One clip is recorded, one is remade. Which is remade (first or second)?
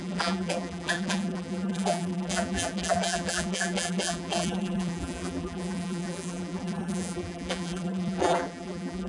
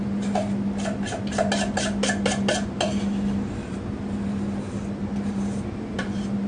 first